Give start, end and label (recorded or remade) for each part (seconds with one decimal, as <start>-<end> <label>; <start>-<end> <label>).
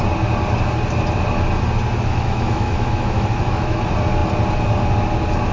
0.0-2.1 recorded; 2.1-3.8 remade; 3.8-5.5 recorded